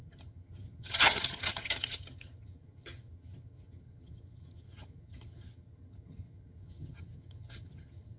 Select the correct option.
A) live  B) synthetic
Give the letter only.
B